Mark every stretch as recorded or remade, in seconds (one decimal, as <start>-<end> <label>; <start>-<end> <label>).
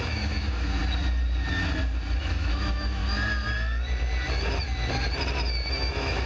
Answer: 0.0-0.8 remade; 0.8-2.2 recorded; 2.2-3.0 remade; 3.0-5.7 recorded; 5.7-6.3 remade